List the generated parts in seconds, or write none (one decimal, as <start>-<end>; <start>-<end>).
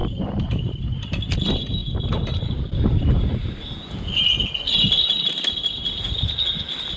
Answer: none